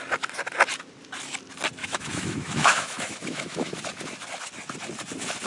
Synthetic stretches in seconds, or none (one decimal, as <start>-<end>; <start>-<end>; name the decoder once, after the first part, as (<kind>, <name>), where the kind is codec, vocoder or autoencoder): 1.8-3.8 (autoencoder, DAC-VAE)